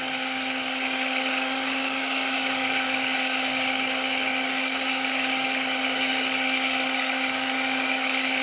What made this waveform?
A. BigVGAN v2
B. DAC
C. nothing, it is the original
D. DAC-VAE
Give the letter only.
B